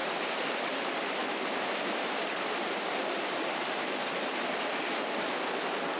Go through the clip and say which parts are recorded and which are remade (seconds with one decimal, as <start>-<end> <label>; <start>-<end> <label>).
0.0-0.7 remade; 0.7-1.2 recorded; 1.2-4.8 remade; 4.8-6.0 recorded